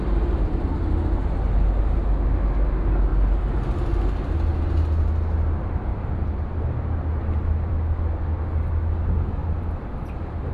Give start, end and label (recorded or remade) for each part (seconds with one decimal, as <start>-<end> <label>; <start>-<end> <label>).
0.0-10.5 recorded

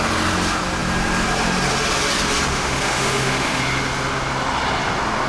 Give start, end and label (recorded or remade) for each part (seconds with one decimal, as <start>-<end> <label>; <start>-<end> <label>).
0.0-2.5 recorded; 2.5-3.6 remade; 3.6-5.3 recorded

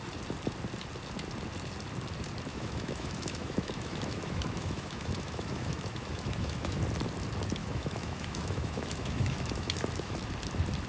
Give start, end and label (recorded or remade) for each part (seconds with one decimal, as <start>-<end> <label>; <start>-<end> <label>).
0.0-2.5 recorded; 2.5-6.8 remade; 6.8-7.6 recorded; 7.6-10.3 remade; 10.3-10.9 recorded

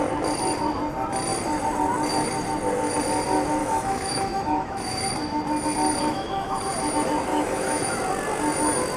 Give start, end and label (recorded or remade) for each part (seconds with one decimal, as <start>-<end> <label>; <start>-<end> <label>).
0.0-3.6 recorded; 3.6-5.0 remade; 5.0-6.1 recorded; 6.1-6.6 remade; 6.6-7.3 recorded; 7.3-8.0 remade; 8.0-9.0 recorded

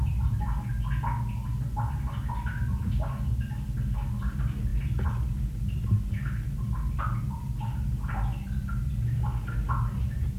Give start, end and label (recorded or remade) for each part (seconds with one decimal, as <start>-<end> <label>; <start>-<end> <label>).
0.0-10.4 recorded